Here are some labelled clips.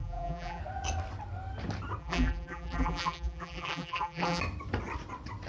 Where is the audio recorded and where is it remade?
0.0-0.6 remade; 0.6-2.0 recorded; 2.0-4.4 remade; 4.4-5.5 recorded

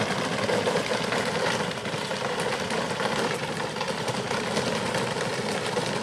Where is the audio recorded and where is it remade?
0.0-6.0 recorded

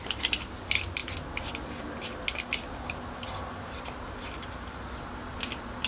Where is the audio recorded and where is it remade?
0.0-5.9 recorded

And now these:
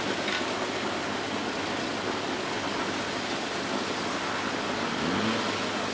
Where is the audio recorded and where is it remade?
0.0-5.9 recorded

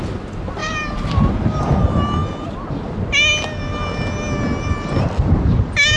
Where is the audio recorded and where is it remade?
0.0-0.6 recorded; 0.6-1.6 remade; 1.6-6.0 recorded

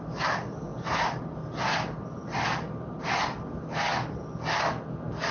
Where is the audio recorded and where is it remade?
0.0-5.3 recorded